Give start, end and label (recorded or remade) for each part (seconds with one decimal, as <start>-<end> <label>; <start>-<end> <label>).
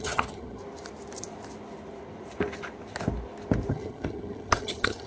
0.0-0.6 remade; 0.6-3.7 recorded; 3.7-5.1 remade